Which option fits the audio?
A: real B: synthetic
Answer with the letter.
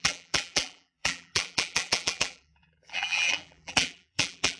B